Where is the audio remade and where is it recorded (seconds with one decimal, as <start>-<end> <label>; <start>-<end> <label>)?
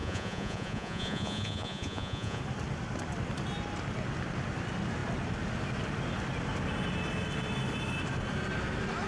0.0-2.4 remade; 2.4-9.1 recorded